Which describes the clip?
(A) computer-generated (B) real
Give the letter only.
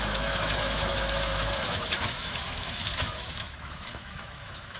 A